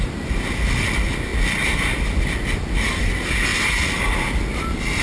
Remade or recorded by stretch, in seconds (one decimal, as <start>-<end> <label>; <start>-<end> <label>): 0.0-5.0 recorded